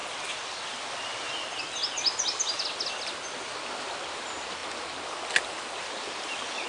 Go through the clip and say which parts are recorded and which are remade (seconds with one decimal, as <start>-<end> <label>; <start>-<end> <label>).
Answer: 0.0-6.7 recorded